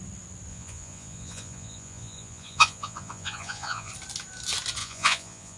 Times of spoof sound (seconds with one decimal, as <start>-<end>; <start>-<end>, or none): 0.5-3.9; 4.8-5.6